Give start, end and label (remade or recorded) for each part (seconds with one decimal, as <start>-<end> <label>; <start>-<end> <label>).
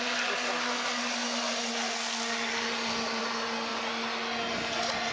0.0-5.1 recorded